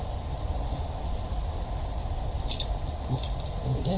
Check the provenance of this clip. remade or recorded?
recorded